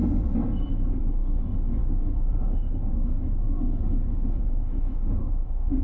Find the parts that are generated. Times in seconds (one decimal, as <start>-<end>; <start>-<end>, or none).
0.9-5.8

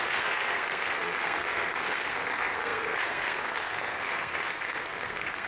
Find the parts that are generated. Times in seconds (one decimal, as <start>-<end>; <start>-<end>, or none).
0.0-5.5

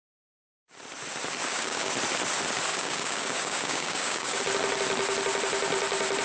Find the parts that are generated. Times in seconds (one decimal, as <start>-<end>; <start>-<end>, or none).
1.4-1.9; 2.7-4.4